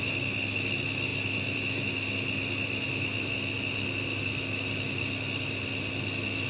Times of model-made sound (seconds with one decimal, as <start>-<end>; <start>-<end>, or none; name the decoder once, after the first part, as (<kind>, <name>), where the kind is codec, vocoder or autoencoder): none